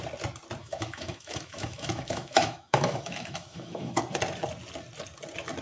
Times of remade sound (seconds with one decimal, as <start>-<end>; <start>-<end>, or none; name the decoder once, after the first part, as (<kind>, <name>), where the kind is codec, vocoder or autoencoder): 0.6-4.0 (autoencoder, DAC-VAE)